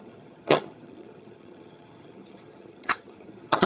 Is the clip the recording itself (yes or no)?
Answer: no